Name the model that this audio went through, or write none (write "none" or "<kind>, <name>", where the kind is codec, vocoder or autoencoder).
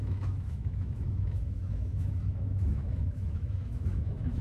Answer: autoencoder, DAC-VAE